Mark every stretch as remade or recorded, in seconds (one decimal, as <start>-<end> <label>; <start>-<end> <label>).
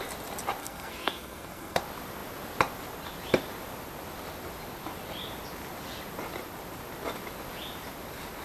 0.0-0.6 recorded; 0.6-1.8 remade; 1.8-8.4 recorded